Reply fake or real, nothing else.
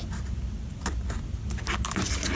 real